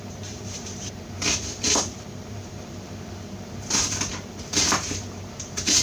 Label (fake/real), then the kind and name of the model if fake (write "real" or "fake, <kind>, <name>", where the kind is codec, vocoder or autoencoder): fake, vocoder, BigVGAN v2